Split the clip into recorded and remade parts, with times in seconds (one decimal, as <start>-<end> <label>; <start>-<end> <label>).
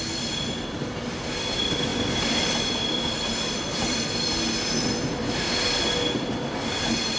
0.0-7.2 recorded